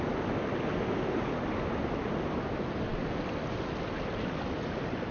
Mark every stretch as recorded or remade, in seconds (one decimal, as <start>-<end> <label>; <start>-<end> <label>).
0.0-5.1 recorded